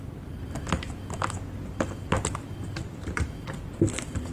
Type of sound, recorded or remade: remade